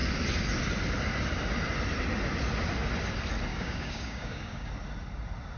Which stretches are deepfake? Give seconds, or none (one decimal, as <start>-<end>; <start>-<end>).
3.5-4.7